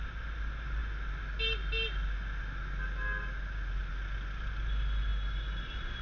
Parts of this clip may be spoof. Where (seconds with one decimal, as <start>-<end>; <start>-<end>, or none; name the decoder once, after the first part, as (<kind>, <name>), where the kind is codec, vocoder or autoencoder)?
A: none